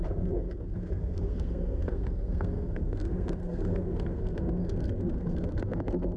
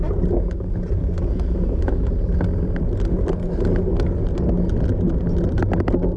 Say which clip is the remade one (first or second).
first